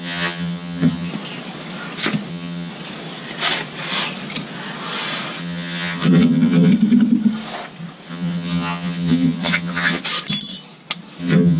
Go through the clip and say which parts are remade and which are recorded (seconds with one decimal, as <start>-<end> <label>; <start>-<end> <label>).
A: 0.0-1.1 remade; 1.1-2.3 recorded; 2.3-2.7 remade; 2.7-5.4 recorded; 5.4-6.7 remade; 6.7-8.1 recorded; 8.1-10.0 remade; 10.0-11.2 recorded; 11.2-11.6 remade